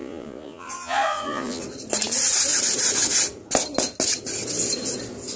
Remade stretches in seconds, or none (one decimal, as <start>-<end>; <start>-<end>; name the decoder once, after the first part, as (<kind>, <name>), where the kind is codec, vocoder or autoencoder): 0.0-1.6 (vocoder, Vocos)